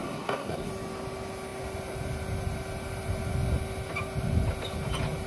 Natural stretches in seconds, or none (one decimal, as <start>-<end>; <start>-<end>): 0.7-5.3